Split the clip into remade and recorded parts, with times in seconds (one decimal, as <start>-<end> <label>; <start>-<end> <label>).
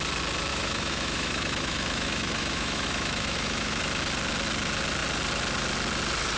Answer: 0.0-0.5 recorded; 0.5-3.8 remade; 3.8-6.4 recorded